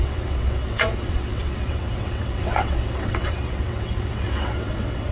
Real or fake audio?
fake